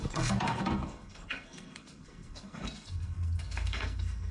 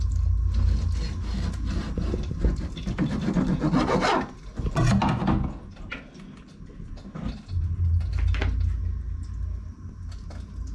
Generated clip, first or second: first